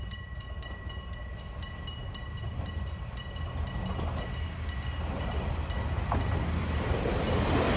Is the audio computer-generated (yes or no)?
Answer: no